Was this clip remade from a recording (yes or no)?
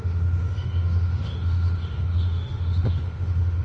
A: yes